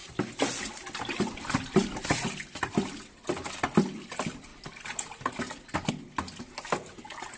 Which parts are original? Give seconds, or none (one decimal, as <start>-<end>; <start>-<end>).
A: 0.0-7.4